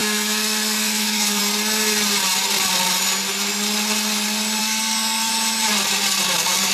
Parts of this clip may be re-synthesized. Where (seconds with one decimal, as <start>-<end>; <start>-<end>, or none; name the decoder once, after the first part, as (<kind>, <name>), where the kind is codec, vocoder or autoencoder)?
0.0-1.4 (codec, SNAC); 4.6-5.3